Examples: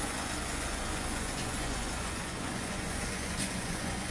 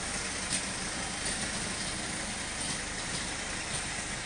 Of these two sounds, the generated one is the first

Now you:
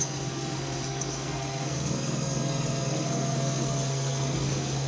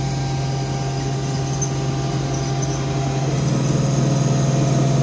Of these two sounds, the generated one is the first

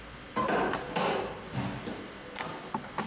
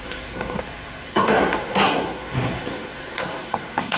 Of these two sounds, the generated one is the second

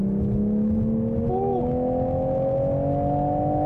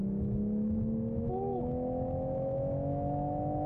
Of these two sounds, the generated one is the second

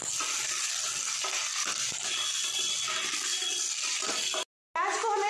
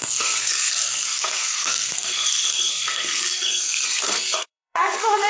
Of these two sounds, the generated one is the second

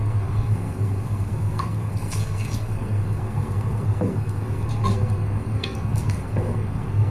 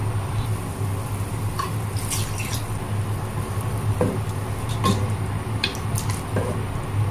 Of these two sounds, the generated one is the first